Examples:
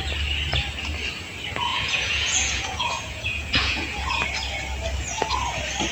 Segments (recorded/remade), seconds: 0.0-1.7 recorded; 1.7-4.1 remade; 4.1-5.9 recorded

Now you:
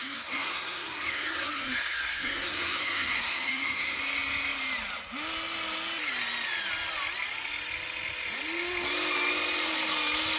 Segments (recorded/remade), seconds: 0.0-4.0 remade; 4.0-10.4 recorded

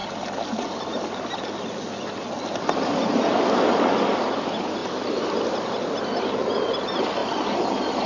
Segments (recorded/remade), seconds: 0.0-4.8 recorded; 4.8-6.2 remade; 6.2-7.2 recorded; 7.2-8.1 remade

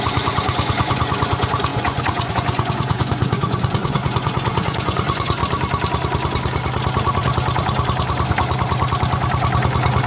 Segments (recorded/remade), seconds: 0.0-5.4 remade; 5.4-10.1 recorded